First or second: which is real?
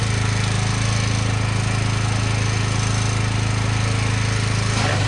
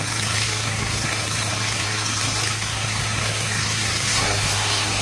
first